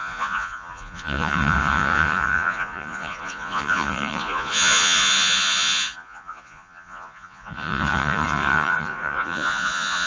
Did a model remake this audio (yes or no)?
yes